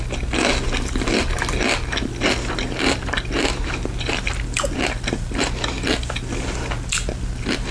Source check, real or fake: real